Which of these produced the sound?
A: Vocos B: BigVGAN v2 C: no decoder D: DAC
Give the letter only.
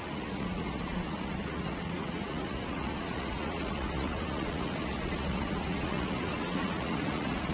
A